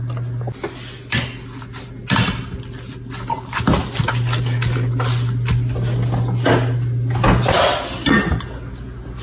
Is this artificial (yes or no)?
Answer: no